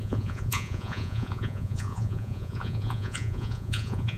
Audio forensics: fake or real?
fake